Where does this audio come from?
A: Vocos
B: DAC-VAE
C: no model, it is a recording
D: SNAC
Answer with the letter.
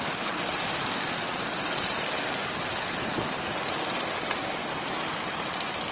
C